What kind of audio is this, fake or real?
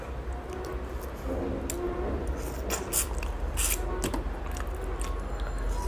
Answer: real